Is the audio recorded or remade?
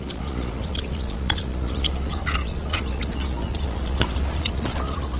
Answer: remade